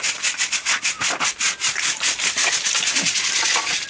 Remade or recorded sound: recorded